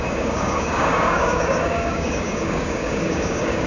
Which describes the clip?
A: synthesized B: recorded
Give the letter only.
A